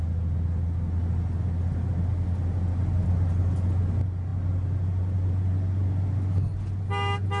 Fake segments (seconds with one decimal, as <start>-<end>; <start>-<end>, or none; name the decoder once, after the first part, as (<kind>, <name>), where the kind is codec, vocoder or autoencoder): none